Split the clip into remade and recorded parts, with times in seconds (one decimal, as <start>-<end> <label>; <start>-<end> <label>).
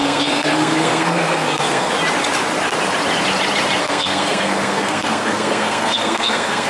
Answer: 0.0-1.9 remade; 1.9-3.8 recorded; 3.8-6.7 remade